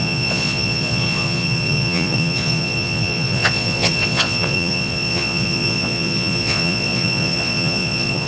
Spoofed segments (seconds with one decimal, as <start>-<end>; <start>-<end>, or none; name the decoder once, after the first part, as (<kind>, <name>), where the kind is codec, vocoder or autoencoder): 0.0-8.3 (vocoder, Vocos)

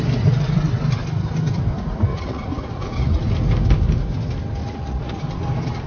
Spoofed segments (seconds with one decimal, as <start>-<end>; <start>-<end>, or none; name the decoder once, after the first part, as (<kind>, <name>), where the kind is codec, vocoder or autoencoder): 2.1-3.2 (vocoder, Vocos); 4.6-5.2